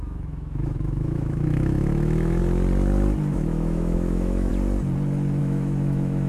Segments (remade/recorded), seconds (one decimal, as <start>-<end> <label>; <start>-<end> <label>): 0.0-2.4 remade; 2.4-3.3 recorded; 3.3-4.5 remade; 4.5-5.4 recorded; 5.4-6.3 remade